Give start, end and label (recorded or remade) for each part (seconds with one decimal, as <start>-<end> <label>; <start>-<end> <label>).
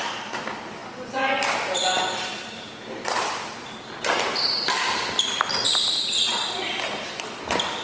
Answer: 0.0-7.8 recorded